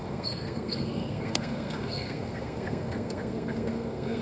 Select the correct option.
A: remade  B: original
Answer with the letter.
A